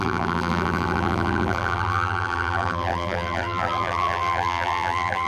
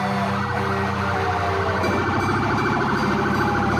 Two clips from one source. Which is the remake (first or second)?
first